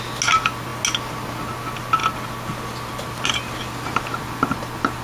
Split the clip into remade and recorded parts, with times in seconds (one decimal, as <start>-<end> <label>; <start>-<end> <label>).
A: 0.0-5.0 recorded